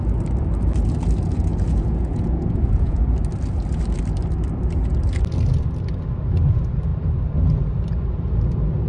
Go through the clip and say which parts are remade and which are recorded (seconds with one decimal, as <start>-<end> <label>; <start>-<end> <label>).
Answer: 0.0-1.5 recorded; 1.5-3.0 remade; 3.0-8.9 recorded